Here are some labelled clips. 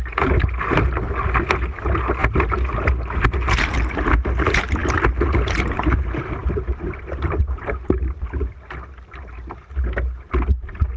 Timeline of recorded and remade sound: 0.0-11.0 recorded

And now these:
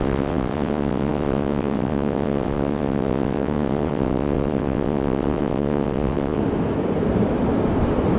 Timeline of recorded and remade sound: 0.0-6.4 remade; 6.4-8.2 recorded

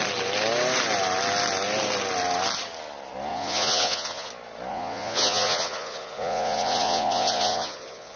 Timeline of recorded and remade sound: 0.0-3.3 recorded; 3.3-4.3 remade; 4.3-4.7 recorded; 4.7-8.2 remade

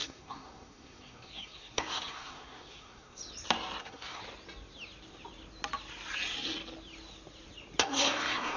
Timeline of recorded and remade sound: 0.0-3.2 remade; 3.2-3.8 recorded; 3.8-4.2 remade; 4.2-7.8 recorded; 7.8-8.6 remade